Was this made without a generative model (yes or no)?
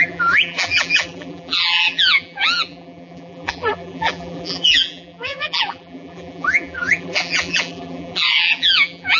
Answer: no